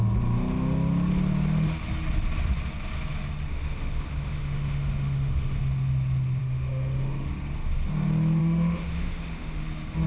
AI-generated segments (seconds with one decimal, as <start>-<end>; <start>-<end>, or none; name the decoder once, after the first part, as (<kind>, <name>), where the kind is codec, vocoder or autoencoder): 3.5-5.6 (autoencoder, DAC-VAE); 6.4-7.3; 8.4-9.6

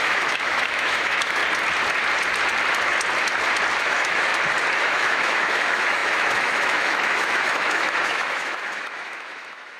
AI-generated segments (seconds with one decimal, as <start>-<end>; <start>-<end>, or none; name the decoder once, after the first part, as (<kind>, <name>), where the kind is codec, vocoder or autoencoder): 0.0-1.4 (autoencoder, DAC-VAE); 3.8-4.3; 4.8-9.8

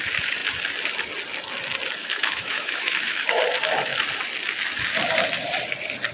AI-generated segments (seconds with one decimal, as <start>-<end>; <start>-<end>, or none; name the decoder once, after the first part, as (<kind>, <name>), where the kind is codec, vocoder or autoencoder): 2.0-3.4 (autoencoder, DAC-VAE)

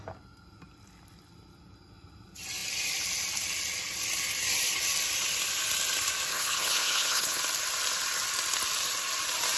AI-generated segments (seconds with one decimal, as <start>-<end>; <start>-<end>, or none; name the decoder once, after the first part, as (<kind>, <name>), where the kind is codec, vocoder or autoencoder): 6.3-7.4 (codec, HILCodec)